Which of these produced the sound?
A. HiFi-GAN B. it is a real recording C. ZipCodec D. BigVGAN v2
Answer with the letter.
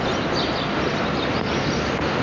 B